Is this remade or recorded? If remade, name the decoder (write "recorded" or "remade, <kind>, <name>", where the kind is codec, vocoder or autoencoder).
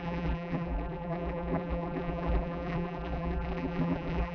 remade, vocoder, BigVGAN v2